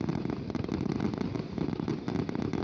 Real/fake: real